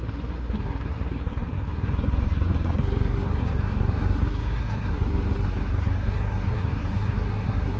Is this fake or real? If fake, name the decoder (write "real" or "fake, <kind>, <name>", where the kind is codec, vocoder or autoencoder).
fake, codec, SNAC